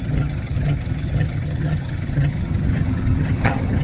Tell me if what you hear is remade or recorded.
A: remade